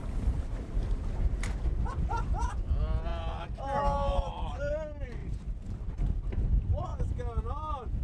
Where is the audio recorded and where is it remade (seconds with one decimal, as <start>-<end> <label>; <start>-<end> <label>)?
0.0-8.0 recorded